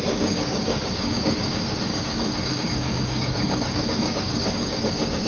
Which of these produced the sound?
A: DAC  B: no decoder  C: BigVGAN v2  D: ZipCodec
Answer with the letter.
A